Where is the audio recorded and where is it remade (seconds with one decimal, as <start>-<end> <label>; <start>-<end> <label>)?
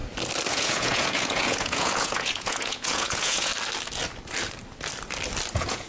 0.0-0.5 recorded; 0.5-3.5 remade; 3.5-5.5 recorded; 5.5-5.9 remade